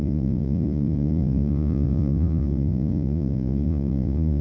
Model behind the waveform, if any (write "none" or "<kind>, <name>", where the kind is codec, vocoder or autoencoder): vocoder, Vocos